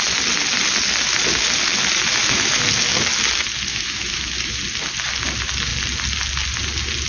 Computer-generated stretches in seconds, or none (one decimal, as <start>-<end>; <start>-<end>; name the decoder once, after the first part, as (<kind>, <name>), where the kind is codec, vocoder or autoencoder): 2.1-2.6 (autoencoder, DAC-VAE); 3.7-4.6